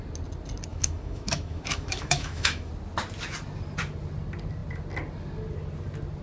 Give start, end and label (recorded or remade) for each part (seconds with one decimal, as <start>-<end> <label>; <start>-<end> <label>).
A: 0.0-0.7 recorded; 0.7-2.7 remade; 2.7-6.2 recorded